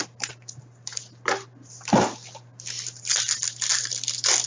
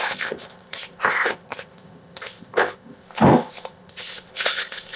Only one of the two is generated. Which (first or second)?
second